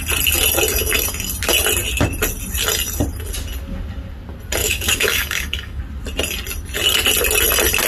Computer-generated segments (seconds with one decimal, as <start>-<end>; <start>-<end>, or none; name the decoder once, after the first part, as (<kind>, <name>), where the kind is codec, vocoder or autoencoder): 4.6-5.8 (codec, DAC)